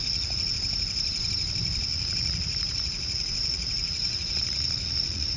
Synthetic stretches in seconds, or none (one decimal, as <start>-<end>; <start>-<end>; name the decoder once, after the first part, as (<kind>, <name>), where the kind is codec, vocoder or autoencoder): 0.0-0.5 (vocoder, Vocos); 1.9-5.4